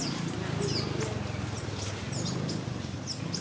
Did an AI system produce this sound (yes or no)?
no